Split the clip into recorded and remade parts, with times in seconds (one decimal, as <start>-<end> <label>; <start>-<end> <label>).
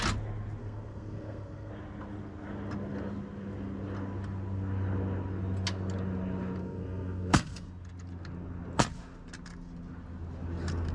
0.0-0.6 recorded; 0.6-1.7 remade; 1.7-6.6 recorded; 6.6-7.7 remade; 7.7-10.9 recorded